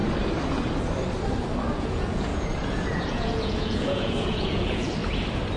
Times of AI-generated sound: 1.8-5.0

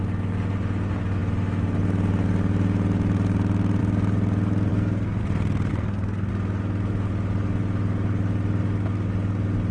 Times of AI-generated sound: 4.7-5.2; 5.7-6.3

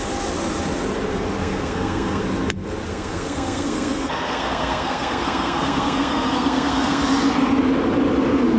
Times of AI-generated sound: 1.4-2.2; 2.9-7.0

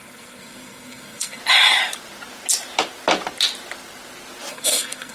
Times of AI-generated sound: 0.0-1.4; 4.5-5.1

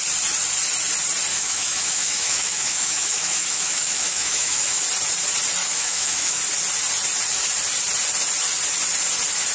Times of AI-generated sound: 1.3-4.8; 5.6-6.4

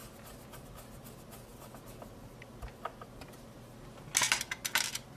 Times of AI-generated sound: none

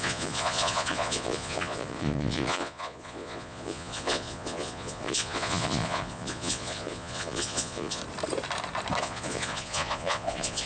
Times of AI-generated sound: 0.0-8.0; 9.0-10.7

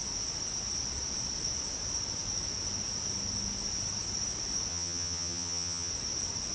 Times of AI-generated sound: 4.7-5.9